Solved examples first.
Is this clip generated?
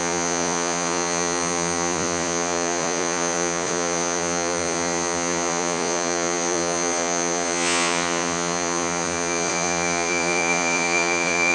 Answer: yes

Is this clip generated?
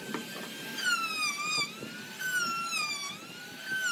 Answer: no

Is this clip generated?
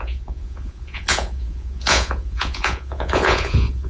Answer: yes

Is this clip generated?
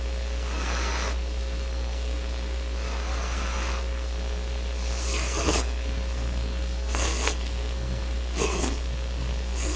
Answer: yes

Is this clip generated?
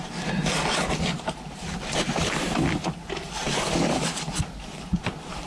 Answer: no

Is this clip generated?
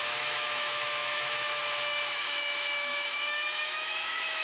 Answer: yes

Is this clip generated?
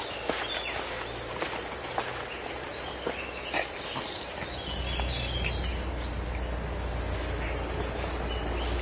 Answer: no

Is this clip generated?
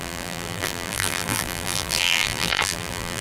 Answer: yes